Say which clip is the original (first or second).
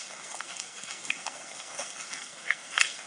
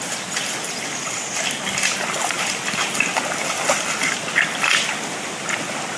second